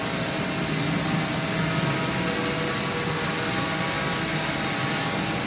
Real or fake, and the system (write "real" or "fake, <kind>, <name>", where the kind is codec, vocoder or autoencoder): real